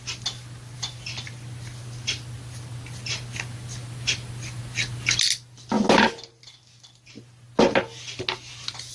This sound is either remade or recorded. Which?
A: recorded